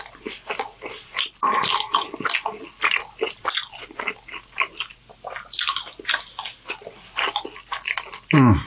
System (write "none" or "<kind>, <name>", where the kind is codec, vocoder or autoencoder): none